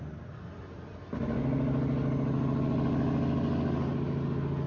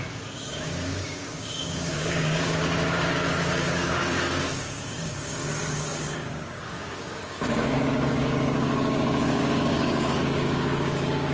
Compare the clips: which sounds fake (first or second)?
second